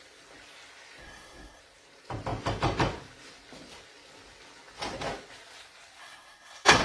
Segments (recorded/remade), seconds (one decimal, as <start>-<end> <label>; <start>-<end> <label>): 0.0-1.0 recorded; 1.0-1.6 remade; 1.6-6.0 recorded; 6.0-6.8 remade

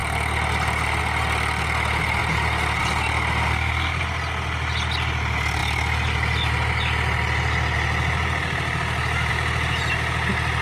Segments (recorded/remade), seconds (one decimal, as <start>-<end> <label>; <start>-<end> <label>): 0.0-3.5 recorded; 3.5-4.0 remade; 4.0-10.6 recorded